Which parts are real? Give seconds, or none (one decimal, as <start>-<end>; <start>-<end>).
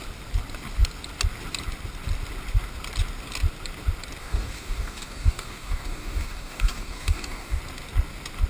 0.0-4.2; 7.6-8.5